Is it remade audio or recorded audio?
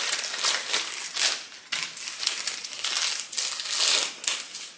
recorded